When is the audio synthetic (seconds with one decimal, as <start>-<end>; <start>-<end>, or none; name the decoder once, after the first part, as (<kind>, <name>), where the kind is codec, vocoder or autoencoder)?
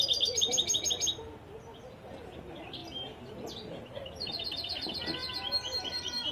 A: 5.2-6.3 (vocoder, BigVGAN v2)